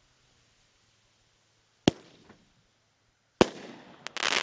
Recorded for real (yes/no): yes